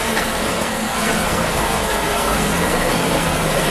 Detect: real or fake fake